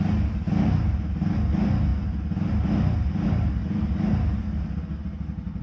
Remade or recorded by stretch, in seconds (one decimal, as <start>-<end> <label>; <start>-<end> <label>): 0.0-5.6 recorded